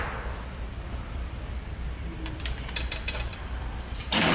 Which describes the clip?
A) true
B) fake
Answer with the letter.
B